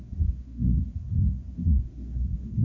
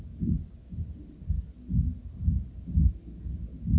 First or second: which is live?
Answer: second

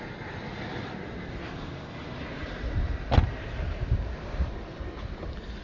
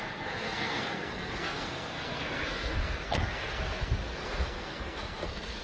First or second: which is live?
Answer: first